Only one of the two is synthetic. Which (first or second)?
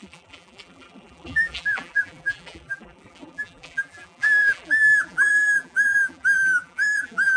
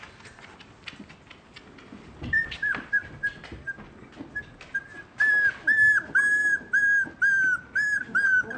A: first